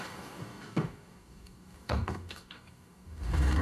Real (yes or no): no